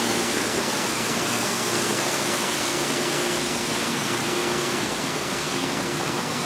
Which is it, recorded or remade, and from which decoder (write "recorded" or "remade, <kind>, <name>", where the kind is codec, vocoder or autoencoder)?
remade, codec, SNAC